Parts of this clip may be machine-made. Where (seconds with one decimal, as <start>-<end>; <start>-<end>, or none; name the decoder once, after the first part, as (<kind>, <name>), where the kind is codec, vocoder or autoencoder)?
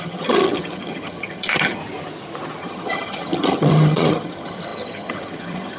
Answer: 0.0-1.8 (vocoder, HiFi-GAN); 2.6-5.8